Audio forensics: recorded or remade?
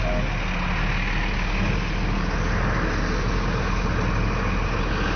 recorded